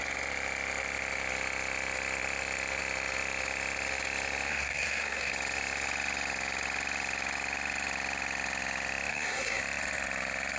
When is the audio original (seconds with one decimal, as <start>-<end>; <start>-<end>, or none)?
0.0-4.5; 5.3-9.1; 9.6-10.6